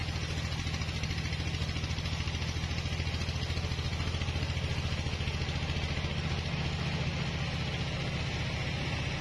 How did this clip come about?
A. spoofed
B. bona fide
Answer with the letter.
B